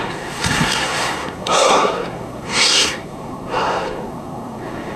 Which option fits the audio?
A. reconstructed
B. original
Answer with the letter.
A